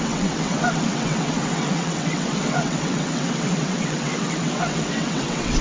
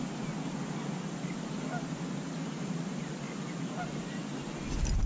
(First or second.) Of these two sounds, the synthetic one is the first